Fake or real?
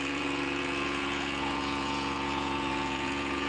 fake